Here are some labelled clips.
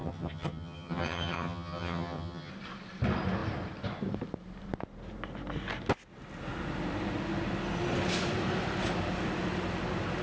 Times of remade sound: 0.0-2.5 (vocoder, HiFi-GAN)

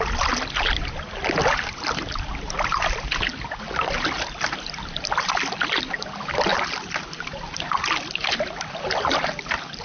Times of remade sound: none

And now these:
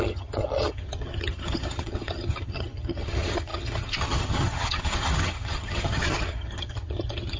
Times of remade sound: 0.0-7.4 (vocoder, HiFi-GAN)

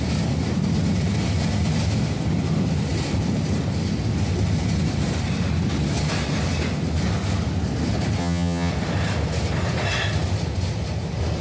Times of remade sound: 8.2-8.7 (vocoder, HiFi-GAN)

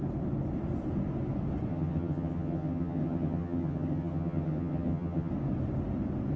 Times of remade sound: 1.7-5.3 (vocoder, HiFi-GAN)

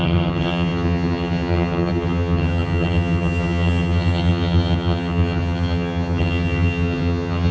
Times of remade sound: 0.0-7.5 (vocoder, HiFi-GAN)

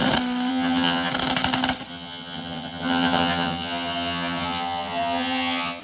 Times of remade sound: 0.5-1.1 (vocoder, HiFi-GAN); 1.9-5.8